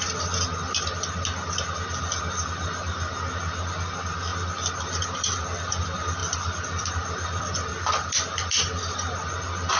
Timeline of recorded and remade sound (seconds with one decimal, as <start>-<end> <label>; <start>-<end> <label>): 0.0-4.3 recorded; 4.3-5.7 remade; 5.7-6.2 recorded; 6.2-7.4 remade; 7.4-9.8 recorded